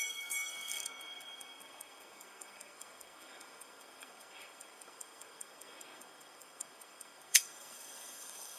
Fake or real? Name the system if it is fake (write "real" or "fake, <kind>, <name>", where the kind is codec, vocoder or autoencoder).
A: fake, codec, SNAC